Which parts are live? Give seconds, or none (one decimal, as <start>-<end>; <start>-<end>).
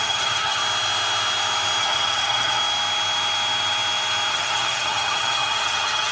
0.6-1.8; 2.6-4.3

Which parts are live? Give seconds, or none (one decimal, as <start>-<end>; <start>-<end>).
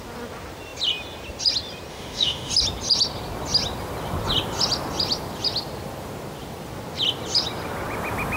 0.0-1.9; 2.5-8.4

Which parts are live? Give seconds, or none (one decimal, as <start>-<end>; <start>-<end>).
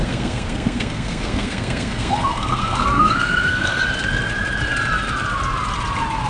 3.8-6.3